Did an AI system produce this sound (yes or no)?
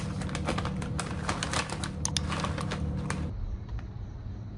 no